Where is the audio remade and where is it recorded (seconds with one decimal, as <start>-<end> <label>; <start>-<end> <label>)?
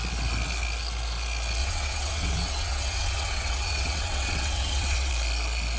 0.0-1.6 recorded; 1.6-5.1 remade; 5.1-5.8 recorded